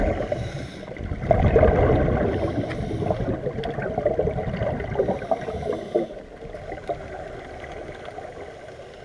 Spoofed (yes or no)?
no